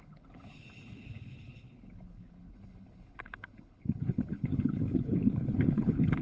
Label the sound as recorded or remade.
remade